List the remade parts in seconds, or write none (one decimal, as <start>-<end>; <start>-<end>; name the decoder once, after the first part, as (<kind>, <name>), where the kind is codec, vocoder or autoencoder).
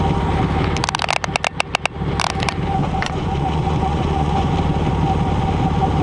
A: 2.8-4.5 (vocoder, Vocos)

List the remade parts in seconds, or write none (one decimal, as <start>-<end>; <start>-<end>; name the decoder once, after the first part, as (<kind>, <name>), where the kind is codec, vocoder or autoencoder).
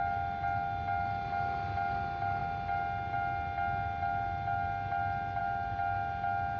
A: none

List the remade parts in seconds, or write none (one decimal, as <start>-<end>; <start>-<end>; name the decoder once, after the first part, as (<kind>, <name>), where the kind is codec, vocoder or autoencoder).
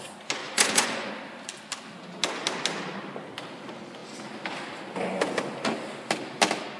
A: 0.4-1.1 (vocoder, Vocos)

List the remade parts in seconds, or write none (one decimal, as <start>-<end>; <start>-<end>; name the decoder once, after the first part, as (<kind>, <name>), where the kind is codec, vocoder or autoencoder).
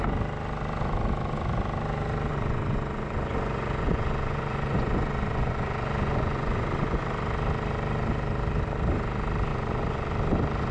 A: 2.3-7.0 (vocoder, Vocos); 9.5-10.1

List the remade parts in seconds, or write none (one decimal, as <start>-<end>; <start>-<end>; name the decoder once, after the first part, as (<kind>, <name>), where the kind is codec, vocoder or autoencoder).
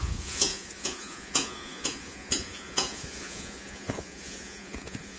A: 0.0-5.2 (vocoder, Vocos)